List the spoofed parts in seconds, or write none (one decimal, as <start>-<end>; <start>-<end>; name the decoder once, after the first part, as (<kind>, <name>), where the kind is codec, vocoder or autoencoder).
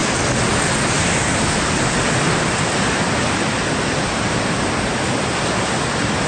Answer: none